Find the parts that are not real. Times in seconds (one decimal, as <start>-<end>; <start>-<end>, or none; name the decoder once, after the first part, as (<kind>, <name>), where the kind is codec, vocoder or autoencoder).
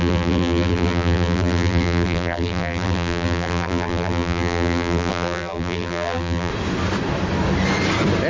0.0-6.5 (vocoder, BigVGAN v2)